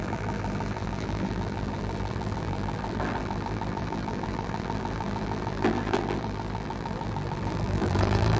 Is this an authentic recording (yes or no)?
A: no